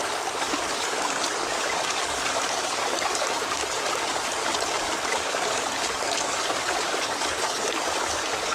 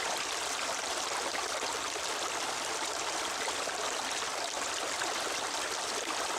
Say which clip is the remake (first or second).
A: first